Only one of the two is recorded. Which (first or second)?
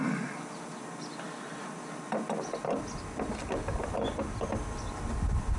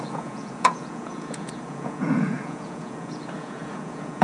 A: first